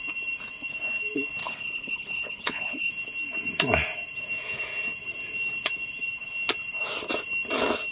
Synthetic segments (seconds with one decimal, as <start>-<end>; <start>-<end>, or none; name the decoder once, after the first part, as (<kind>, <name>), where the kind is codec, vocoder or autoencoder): 1.4-2.9 (codec, HILCodec)